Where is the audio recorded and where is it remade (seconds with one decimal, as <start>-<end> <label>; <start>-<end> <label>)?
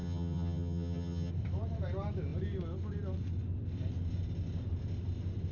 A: 0.0-1.3 remade; 1.3-5.5 recorded